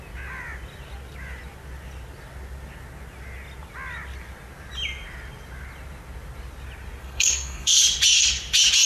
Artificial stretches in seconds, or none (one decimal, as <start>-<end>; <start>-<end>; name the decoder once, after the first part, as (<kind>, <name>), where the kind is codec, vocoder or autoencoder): 7.0-7.8 (codec, SNAC)